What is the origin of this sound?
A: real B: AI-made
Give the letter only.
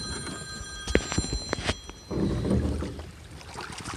A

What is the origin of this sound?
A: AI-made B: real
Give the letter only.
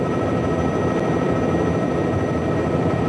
A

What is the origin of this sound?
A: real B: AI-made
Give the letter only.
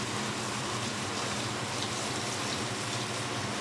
B